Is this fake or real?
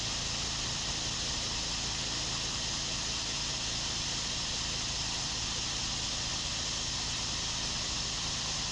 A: real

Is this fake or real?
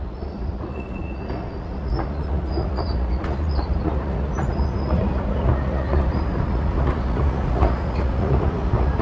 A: fake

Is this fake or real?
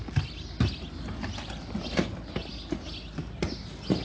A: real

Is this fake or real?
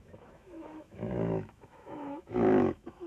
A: fake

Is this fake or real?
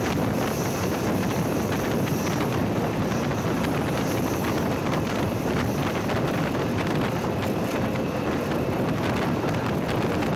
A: fake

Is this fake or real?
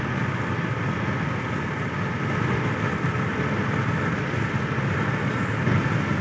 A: real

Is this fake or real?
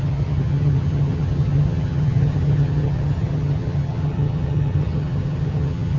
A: fake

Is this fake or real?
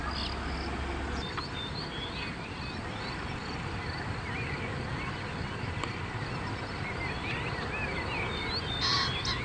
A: real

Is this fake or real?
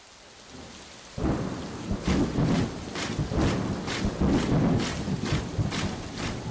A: real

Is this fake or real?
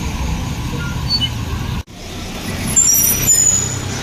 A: real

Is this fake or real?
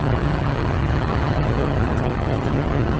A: fake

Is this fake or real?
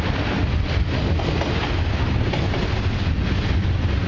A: real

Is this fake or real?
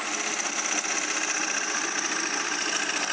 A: real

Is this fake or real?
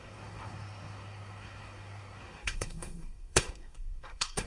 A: fake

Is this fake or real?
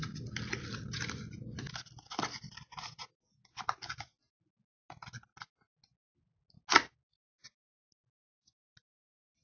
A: real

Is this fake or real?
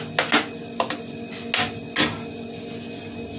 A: real